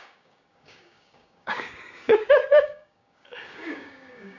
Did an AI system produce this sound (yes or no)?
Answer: yes